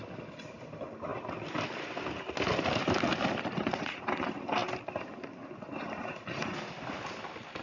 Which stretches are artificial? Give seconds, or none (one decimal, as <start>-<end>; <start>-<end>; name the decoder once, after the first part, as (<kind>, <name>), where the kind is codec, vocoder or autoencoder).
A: none